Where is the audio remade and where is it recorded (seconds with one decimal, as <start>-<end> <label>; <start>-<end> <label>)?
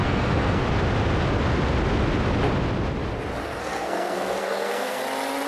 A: 0.0-0.6 remade; 0.6-3.4 recorded; 3.4-5.0 remade; 5.0-5.5 recorded